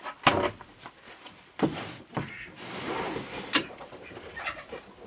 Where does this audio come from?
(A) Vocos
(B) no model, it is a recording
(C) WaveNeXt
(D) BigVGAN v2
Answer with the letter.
B